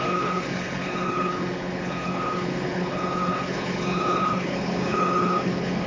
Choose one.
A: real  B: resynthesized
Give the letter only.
B